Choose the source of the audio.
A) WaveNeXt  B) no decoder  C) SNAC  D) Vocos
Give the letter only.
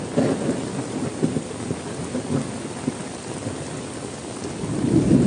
B